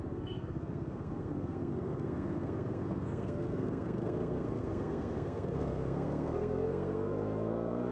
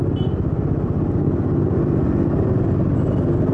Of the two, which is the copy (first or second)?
first